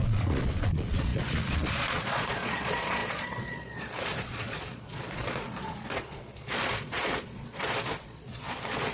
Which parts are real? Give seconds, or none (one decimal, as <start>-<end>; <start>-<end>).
none